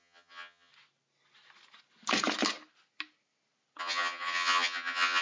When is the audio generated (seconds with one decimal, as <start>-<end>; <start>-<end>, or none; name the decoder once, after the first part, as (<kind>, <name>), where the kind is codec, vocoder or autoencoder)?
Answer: 0.0-0.7 (vocoder, HiFi-GAN); 3.8-5.2